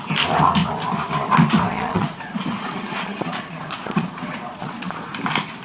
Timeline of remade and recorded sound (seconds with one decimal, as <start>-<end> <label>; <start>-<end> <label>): 0.0-1.7 recorded; 1.7-5.1 remade; 5.1-5.6 recorded